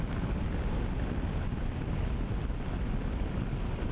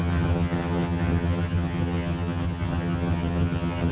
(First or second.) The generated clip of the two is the second